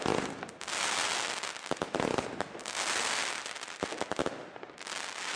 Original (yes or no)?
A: yes